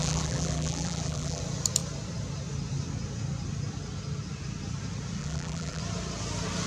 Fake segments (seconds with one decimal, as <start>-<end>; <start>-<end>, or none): 0.0-1.4; 5.2-5.8